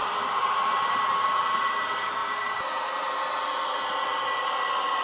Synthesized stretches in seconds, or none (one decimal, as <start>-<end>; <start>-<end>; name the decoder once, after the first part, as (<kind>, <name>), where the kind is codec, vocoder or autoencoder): 0.0-1.7 (vocoder, BigVGAN v2); 2.2-3.8